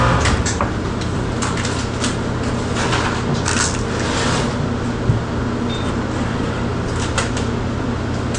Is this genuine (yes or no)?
yes